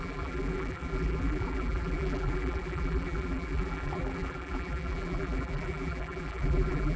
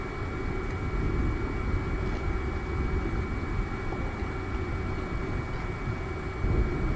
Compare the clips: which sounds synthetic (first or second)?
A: first